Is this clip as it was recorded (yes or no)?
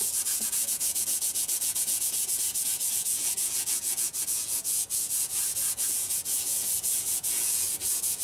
no